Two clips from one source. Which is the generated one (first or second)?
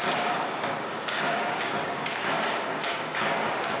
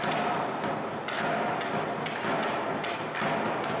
first